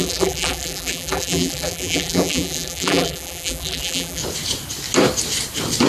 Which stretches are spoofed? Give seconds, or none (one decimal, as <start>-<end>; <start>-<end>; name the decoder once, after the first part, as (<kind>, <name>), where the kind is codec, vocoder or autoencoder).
0.0-4.2 (vocoder, BigVGAN v2)